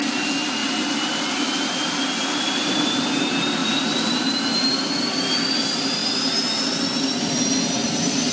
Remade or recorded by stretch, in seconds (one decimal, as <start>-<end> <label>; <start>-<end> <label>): 0.0-0.6 recorded; 0.6-3.0 remade; 3.0-3.6 recorded; 3.6-4.2 remade; 4.2-8.3 recorded